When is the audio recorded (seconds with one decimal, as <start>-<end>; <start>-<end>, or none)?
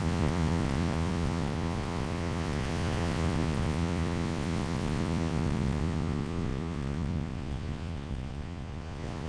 none